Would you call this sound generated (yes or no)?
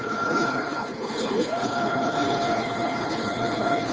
yes